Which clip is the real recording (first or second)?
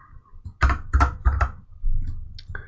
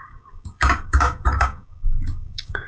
first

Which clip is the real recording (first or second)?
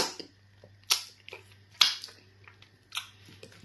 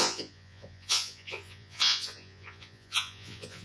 first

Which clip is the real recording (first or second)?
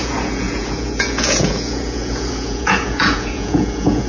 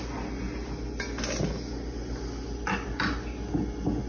second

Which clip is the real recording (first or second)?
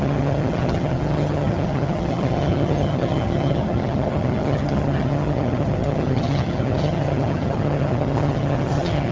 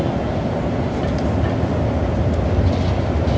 second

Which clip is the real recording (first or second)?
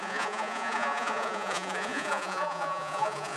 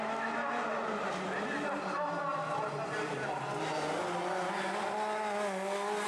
second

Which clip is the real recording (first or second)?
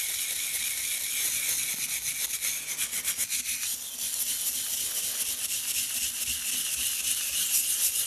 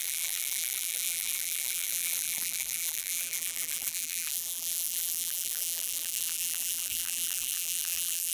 first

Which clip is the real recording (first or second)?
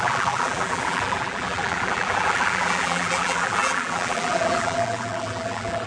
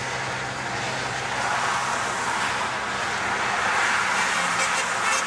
second